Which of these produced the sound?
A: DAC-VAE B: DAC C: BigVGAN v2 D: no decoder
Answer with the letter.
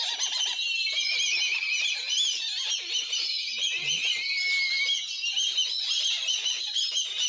D